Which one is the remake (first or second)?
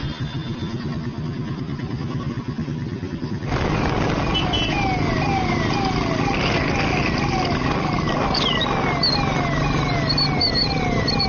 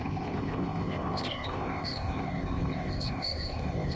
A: second